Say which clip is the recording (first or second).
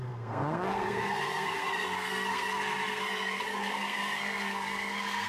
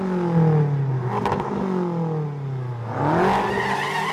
second